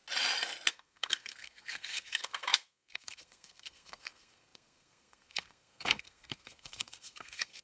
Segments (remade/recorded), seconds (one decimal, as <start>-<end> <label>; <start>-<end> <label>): 0.0-0.7 recorded; 0.7-7.6 remade